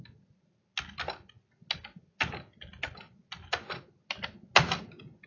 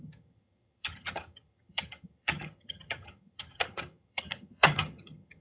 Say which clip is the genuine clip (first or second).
first